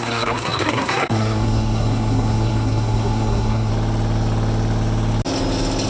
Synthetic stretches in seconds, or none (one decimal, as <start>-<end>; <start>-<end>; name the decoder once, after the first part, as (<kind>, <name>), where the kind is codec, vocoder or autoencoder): 0.0-3.7 (codec, SNAC)